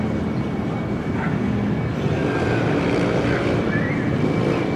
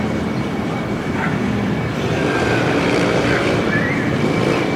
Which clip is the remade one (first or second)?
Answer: second